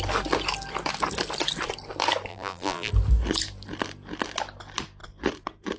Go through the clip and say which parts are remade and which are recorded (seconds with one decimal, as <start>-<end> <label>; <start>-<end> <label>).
0.0-2.3 recorded; 2.3-2.9 remade; 2.9-5.8 recorded

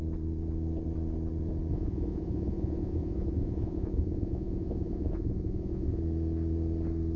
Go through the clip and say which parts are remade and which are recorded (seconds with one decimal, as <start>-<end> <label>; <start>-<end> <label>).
0.0-1.7 recorded; 1.7-6.0 remade; 6.0-7.2 recorded